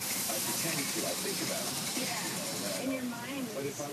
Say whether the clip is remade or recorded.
remade